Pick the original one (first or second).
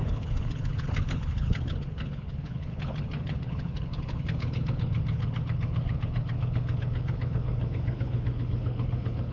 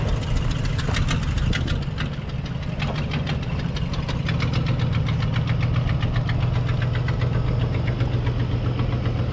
second